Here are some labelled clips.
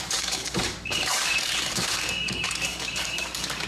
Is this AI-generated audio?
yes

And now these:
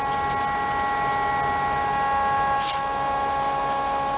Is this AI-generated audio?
no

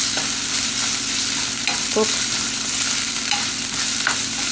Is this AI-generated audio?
no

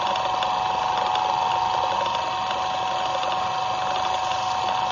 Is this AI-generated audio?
no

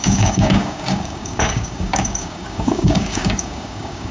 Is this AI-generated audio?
yes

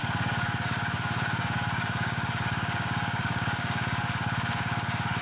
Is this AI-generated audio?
yes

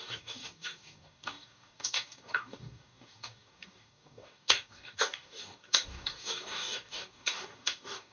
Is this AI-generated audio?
yes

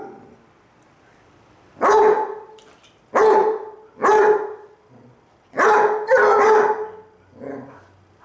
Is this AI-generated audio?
no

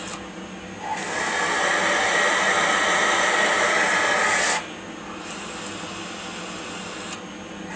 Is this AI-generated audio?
no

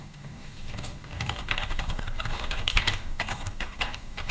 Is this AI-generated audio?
yes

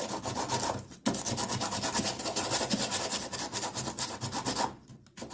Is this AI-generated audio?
no